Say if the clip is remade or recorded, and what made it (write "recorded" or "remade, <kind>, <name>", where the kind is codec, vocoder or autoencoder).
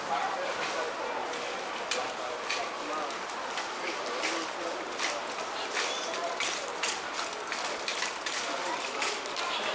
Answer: recorded